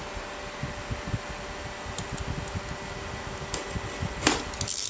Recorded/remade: recorded